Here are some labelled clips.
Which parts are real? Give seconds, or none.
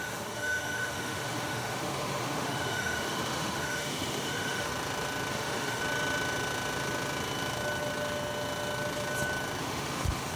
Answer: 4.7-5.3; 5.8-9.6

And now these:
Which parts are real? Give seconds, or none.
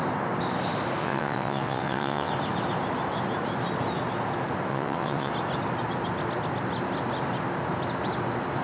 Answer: 0.0-1.0; 2.3-4.7; 5.3-8.6